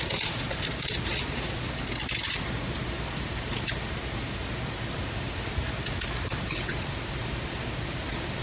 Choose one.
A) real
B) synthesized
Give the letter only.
A